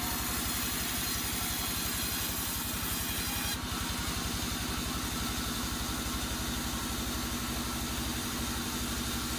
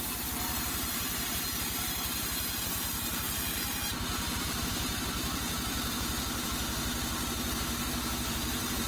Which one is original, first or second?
first